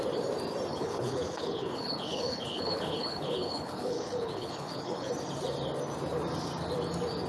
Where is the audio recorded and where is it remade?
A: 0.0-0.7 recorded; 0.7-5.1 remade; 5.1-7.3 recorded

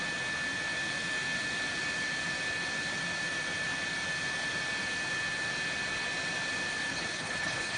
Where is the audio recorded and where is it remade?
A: 0.0-6.9 recorded; 6.9-7.8 remade

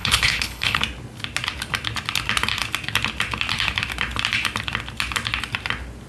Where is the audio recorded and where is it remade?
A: 0.0-0.8 remade; 0.8-6.1 recorded

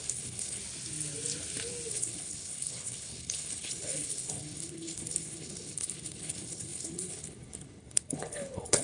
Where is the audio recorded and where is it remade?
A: 0.0-0.6 remade; 0.6-1.9 recorded; 1.9-8.8 remade

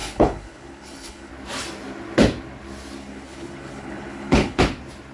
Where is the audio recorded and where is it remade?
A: 0.0-1.3 remade; 1.3-3.0 recorded; 3.0-4.6 remade; 4.6-5.1 recorded

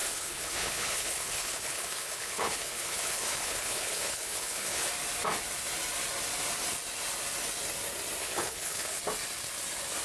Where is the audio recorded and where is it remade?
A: 0.0-4.9 remade; 4.9-8.2 recorded; 8.2-9.0 remade; 9.0-10.0 recorded

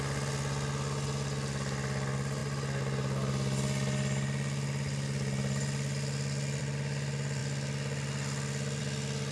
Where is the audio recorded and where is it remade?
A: 0.0-9.3 recorded

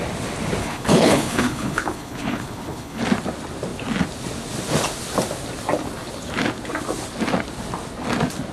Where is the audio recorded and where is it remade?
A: 0.0-0.6 recorded; 0.6-3.0 remade; 3.0-8.5 recorded